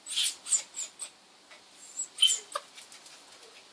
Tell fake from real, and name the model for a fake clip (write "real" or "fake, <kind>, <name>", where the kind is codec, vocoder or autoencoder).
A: real